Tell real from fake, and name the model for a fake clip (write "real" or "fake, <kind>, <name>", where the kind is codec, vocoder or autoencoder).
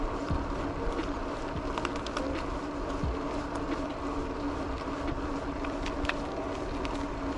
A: real